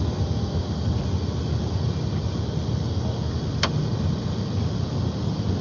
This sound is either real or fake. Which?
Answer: real